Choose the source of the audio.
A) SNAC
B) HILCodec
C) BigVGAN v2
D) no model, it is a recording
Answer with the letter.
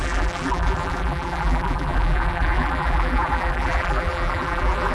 C